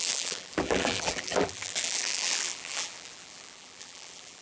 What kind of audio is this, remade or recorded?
remade